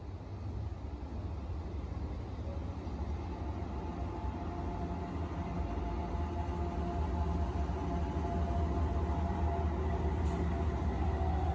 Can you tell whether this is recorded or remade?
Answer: recorded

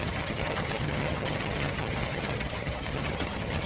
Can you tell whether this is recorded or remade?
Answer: remade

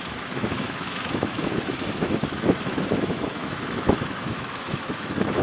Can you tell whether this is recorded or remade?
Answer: remade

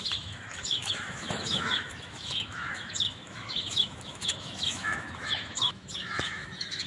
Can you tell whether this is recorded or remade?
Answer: remade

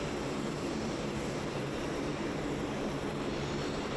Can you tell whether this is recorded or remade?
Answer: remade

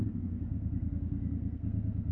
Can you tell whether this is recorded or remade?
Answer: remade